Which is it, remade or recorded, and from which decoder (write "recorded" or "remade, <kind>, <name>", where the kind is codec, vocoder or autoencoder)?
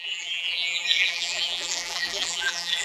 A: remade, vocoder, BigVGAN v2